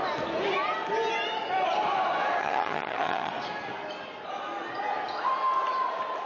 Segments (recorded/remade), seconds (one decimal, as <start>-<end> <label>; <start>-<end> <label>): 0.0-2.4 recorded; 2.4-3.3 remade; 3.3-6.3 recorded